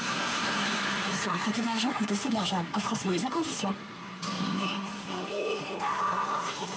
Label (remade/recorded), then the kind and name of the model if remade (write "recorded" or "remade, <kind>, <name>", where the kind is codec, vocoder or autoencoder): remade, codec, SNAC